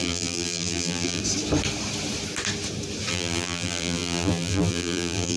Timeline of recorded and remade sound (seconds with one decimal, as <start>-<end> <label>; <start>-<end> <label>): 0.0-1.2 remade; 1.2-3.1 recorded; 3.1-5.4 remade